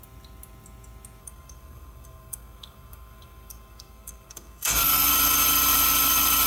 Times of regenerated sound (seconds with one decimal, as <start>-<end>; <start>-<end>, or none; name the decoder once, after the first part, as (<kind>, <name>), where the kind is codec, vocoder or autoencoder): 1.2-5.1 (codec, SNAC)